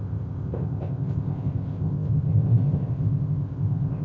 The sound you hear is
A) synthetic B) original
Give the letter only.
A